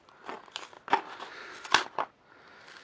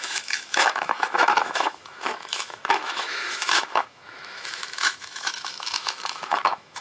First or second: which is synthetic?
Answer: second